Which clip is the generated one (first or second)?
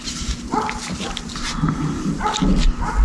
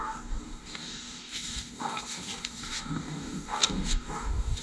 second